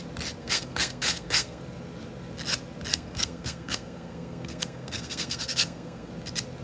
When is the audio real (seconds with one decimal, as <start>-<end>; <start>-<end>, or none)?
0.0-0.4; 1.6-2.9; 6.1-6.6